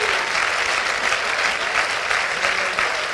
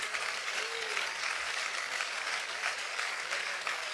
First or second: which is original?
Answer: first